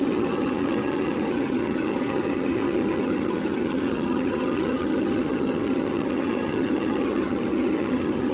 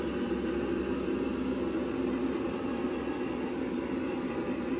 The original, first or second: second